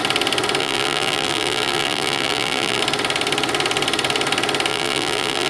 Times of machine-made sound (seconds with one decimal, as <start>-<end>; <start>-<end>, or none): 0.6-2.8; 4.7-5.5